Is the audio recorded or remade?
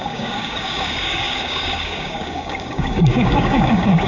remade